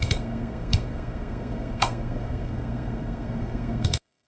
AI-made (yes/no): yes